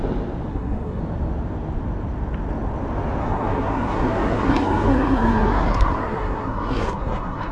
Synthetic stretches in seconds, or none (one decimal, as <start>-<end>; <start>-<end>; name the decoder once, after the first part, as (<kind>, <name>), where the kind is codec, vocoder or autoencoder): 0.5-1.0 (codec, SNAC); 3.2-7.5